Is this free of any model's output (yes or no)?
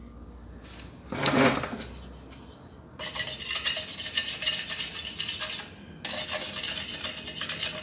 yes